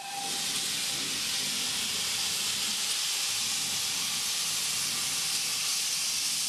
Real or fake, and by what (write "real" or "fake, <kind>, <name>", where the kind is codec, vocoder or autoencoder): real